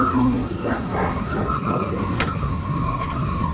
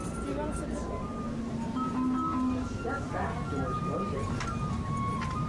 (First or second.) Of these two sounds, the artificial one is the first